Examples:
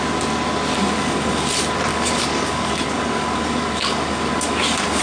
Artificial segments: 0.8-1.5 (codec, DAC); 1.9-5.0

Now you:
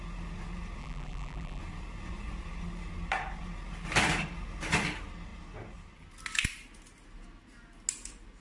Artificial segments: 0.8-1.6 (vocoder, BigVGAN v2)

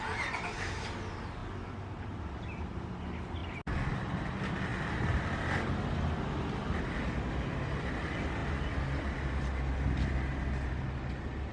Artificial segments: none

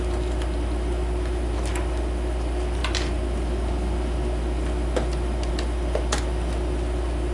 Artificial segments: none

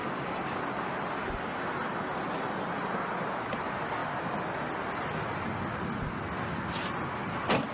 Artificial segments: 0.0-0.6 (codec, DAC)

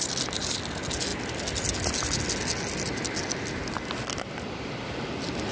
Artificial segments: none